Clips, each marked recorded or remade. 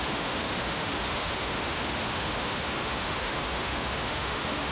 remade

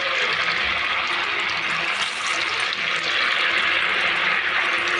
recorded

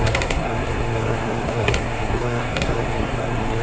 remade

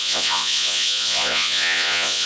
remade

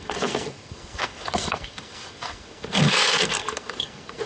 remade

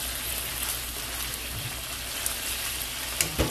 recorded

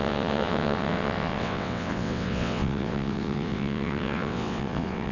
remade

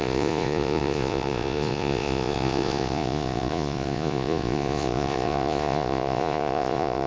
remade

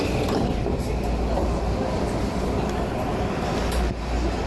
recorded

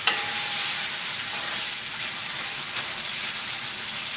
remade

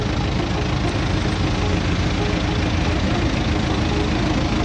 recorded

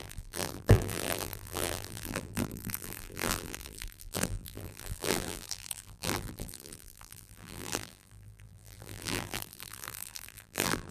remade